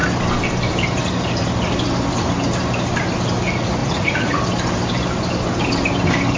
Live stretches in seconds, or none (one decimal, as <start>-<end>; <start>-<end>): 0.0-3.8; 4.4-6.4